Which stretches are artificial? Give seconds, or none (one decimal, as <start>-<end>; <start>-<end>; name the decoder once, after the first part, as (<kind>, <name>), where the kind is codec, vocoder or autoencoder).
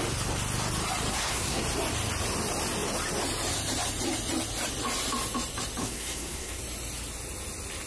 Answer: 1.1-1.6 (codec, SNAC); 5.8-6.6